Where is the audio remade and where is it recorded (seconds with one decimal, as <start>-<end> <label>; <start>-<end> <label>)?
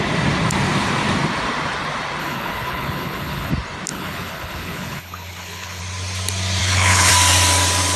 0.0-2.2 recorded; 2.2-3.5 remade; 3.5-3.9 recorded; 3.9-5.8 remade; 5.8-6.6 recorded; 6.6-7.1 remade; 7.1-8.0 recorded